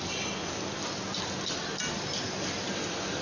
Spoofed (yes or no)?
no